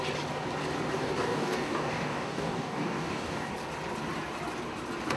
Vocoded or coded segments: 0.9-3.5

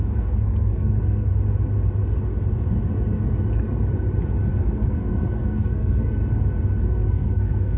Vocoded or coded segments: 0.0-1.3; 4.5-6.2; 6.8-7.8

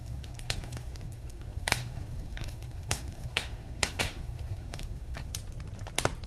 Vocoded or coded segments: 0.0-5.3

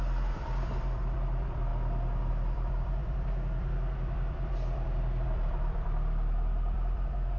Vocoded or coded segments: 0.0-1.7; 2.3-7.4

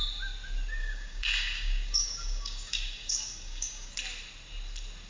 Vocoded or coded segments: 0.8-3.9

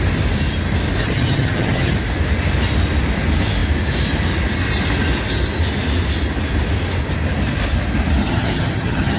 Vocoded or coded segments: 1.0-1.9; 8.2-9.2